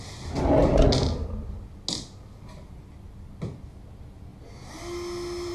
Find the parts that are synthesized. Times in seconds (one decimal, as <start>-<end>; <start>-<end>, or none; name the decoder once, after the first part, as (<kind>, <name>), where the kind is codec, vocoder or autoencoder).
none